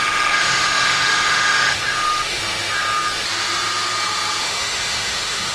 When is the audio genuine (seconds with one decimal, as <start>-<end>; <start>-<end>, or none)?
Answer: 2.4-4.4